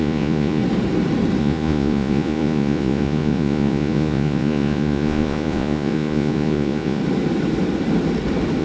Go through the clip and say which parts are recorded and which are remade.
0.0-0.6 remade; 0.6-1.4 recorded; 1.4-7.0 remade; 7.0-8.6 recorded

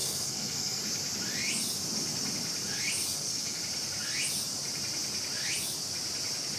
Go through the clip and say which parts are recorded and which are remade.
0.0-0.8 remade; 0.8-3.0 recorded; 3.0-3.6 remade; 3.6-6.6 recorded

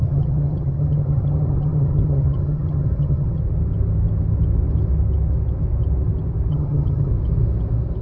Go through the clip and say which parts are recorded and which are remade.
0.0-3.4 remade; 3.4-6.5 recorded; 6.5-7.1 remade; 7.1-8.0 recorded

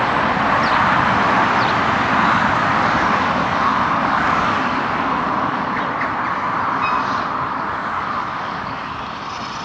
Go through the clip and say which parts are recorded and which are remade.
0.0-2.6 recorded; 2.6-5.8 remade; 5.8-7.5 recorded; 7.5-9.0 remade; 9.0-9.6 recorded